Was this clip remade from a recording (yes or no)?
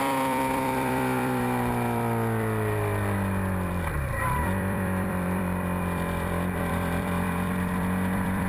yes